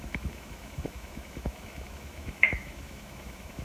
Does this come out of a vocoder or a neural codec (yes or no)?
yes